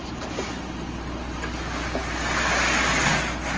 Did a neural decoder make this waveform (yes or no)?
no